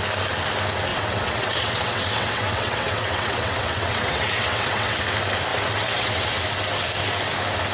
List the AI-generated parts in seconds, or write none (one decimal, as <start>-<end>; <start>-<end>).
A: 0.9-5.0; 5.5-6.3